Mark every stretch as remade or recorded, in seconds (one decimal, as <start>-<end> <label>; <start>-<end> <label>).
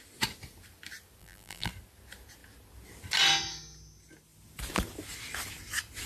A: 0.0-1.2 recorded; 1.2-1.7 remade; 1.7-6.1 recorded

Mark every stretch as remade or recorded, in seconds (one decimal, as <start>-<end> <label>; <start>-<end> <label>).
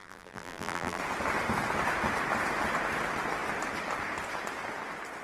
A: 0.0-1.0 remade; 1.0-5.2 recorded